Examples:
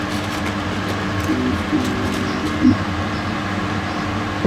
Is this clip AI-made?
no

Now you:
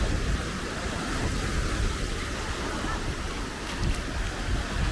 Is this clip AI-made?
no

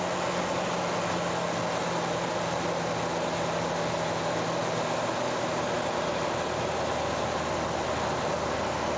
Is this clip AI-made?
no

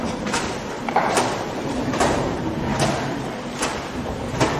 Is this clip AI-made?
yes